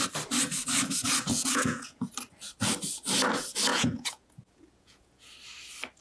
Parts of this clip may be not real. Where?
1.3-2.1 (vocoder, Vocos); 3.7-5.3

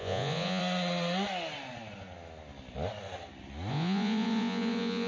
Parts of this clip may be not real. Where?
0.0-0.6 (vocoder, Vocos); 3.7-5.1